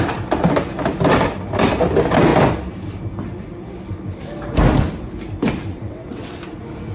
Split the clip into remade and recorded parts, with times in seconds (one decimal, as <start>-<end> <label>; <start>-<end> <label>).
0.0-5.7 recorded; 5.7-6.4 remade; 6.4-6.9 recorded